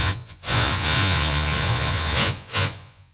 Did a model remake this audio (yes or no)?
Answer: yes